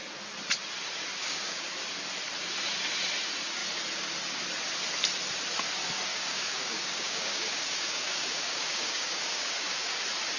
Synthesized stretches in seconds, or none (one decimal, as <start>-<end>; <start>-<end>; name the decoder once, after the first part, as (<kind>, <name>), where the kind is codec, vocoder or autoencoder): 1.1-1.7 (codec, DAC); 6.1-10.0